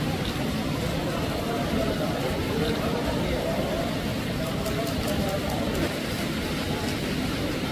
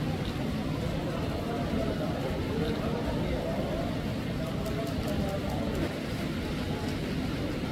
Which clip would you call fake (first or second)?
first